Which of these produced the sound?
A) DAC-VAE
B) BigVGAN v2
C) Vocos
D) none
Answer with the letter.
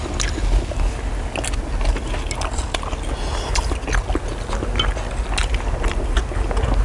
D